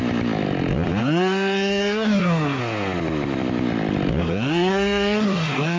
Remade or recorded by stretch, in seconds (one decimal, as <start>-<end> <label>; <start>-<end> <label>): 0.0-1.0 recorded; 1.0-2.6 remade; 2.6-4.2 recorded; 4.2-5.8 remade